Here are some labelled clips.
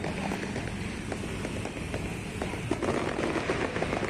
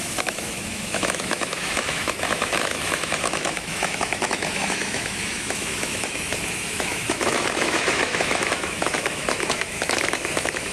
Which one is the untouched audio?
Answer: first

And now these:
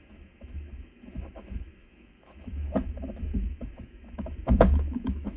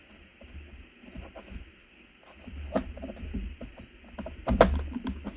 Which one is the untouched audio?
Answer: second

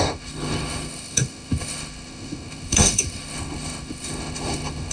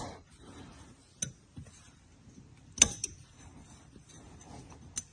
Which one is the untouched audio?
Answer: second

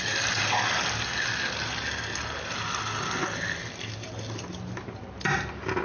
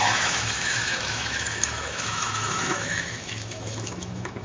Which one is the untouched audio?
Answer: first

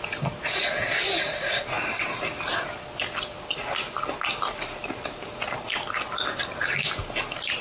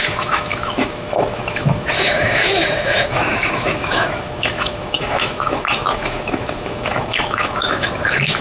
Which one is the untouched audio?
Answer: first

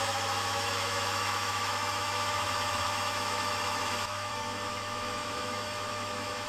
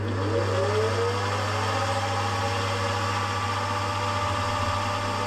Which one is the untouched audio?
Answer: second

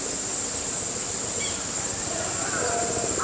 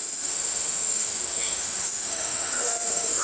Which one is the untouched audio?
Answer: first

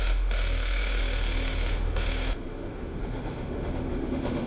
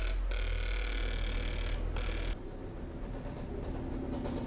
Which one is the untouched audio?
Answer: second